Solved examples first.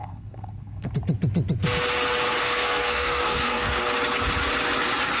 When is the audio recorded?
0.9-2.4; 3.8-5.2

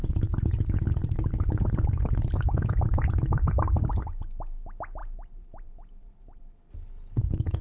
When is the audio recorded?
1.9-3.3; 3.9-5.0; 6.5-7.6